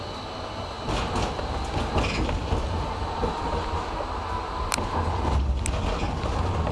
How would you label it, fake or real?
real